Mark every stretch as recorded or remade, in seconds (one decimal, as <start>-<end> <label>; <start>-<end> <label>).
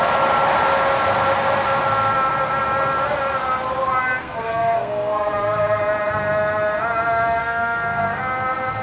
0.0-4.2 recorded; 4.2-5.8 remade; 5.8-7.4 recorded; 7.4-8.2 remade; 8.2-8.8 recorded